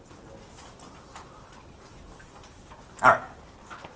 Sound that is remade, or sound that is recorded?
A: recorded